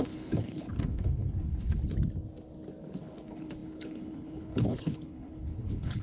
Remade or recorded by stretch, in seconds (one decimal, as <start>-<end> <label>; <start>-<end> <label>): 0.0-1.8 remade; 1.8-3.0 recorded; 3.0-6.0 remade